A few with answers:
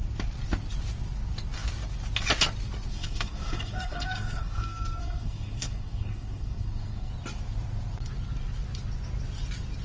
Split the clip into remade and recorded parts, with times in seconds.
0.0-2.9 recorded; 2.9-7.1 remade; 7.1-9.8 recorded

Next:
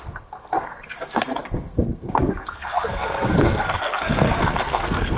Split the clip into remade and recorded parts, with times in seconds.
0.0-5.2 remade

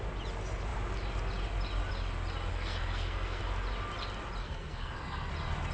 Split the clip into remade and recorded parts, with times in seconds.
0.0-2.5 recorded; 2.5-3.4 remade; 3.4-4.4 recorded; 4.4-5.3 remade; 5.3-5.7 recorded